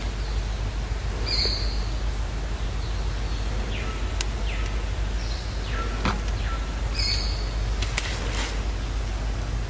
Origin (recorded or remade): recorded